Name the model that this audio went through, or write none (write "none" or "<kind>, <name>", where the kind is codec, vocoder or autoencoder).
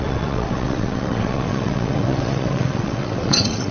vocoder, WaveNeXt